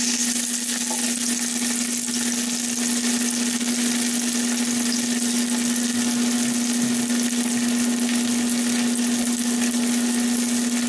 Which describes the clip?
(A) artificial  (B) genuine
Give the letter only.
B